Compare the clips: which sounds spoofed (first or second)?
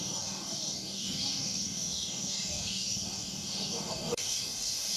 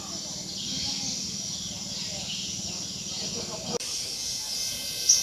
first